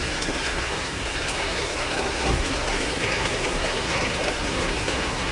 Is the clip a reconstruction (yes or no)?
yes